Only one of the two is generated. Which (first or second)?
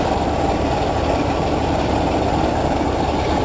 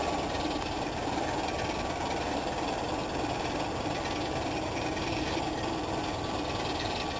first